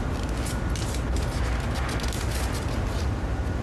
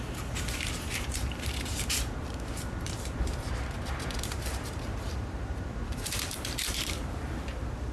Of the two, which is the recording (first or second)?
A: first